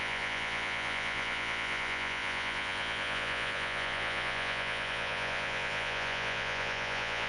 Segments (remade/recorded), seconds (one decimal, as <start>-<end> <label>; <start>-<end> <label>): 0.0-7.3 remade